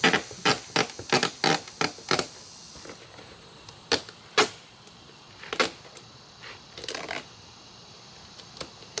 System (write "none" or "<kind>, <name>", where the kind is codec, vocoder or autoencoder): none